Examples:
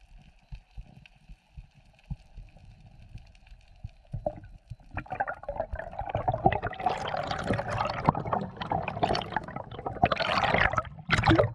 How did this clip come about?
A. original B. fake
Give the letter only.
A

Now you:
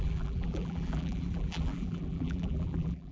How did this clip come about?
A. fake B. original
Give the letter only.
A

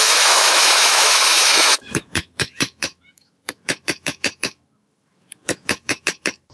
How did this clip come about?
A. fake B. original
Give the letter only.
A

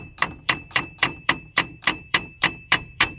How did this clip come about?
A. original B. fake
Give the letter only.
B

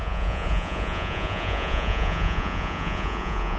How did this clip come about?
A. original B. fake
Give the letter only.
B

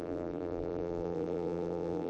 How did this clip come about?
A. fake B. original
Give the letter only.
A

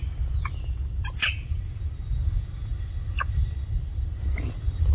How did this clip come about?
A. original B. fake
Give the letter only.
A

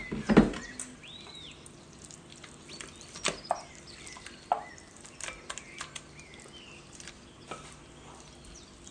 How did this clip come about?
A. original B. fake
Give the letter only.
A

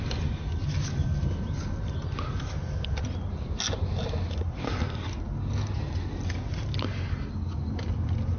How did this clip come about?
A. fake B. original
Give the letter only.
B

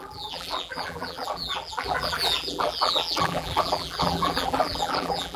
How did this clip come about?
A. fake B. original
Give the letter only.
A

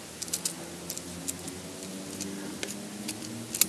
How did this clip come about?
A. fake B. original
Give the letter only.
B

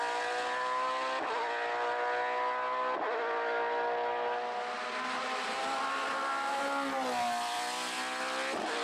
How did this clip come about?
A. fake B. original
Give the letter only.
B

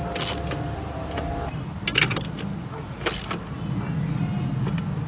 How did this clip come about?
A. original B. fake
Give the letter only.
A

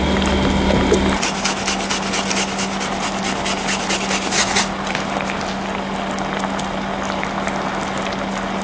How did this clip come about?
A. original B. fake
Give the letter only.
A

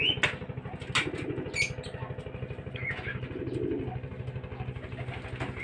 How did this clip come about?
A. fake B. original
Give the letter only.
B